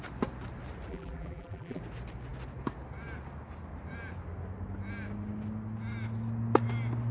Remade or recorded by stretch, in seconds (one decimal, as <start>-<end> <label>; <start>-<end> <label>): 0.0-0.9 recorded; 0.9-1.8 remade; 1.8-7.1 recorded